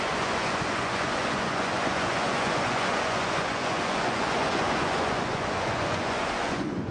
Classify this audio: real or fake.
fake